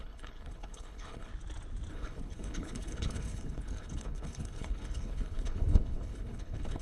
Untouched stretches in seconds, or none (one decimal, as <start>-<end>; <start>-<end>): 1.3-1.9